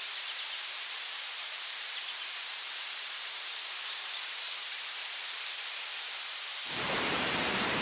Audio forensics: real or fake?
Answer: fake